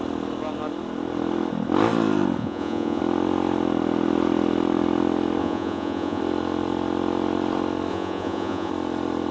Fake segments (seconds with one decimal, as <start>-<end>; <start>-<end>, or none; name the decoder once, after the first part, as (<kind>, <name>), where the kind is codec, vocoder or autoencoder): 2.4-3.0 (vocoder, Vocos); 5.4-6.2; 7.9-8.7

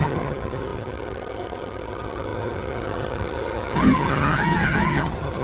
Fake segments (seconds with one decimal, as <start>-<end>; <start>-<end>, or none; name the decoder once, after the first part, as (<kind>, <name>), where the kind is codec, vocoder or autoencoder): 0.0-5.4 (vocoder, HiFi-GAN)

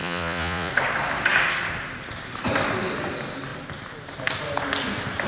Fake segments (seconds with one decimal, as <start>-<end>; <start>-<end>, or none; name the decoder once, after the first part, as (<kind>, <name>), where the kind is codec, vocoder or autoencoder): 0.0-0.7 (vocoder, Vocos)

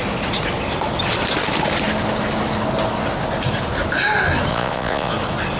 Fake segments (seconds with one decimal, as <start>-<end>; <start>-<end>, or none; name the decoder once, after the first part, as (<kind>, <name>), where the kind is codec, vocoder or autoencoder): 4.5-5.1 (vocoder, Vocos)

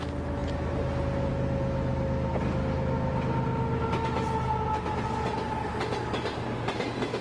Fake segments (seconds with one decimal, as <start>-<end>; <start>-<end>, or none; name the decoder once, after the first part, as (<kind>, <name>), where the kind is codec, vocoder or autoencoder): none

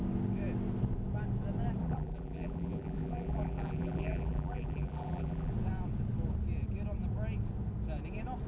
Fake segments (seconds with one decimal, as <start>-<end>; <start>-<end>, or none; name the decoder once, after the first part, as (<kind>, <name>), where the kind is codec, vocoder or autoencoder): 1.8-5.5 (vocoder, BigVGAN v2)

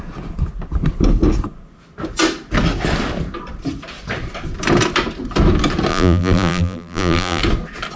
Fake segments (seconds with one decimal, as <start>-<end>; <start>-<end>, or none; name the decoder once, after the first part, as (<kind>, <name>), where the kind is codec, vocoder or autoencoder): 5.9-7.4 (vocoder, BigVGAN v2)

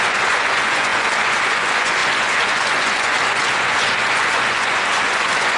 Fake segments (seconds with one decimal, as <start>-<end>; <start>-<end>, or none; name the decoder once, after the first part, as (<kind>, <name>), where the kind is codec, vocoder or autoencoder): 0.0-5.6 (vocoder, Vocos)